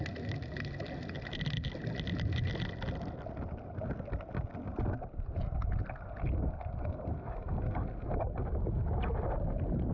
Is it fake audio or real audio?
real